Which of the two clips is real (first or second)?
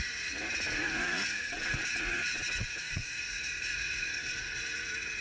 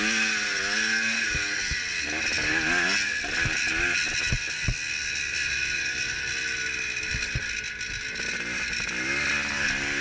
second